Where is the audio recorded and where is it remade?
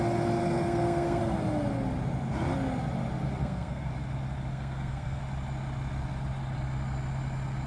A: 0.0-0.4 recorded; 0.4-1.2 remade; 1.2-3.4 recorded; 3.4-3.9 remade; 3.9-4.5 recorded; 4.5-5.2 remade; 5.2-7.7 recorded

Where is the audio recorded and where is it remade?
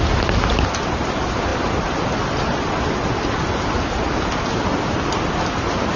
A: 0.0-6.0 recorded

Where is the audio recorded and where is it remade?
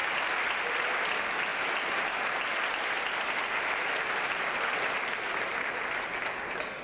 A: 0.0-6.8 recorded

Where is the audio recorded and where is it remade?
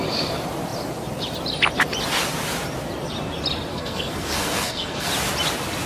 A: 0.0-3.7 recorded; 3.7-5.1 remade; 5.1-5.9 recorded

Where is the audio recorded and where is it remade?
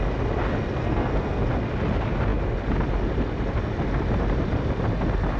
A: 0.0-0.8 recorded; 0.8-1.4 remade; 1.4-5.4 recorded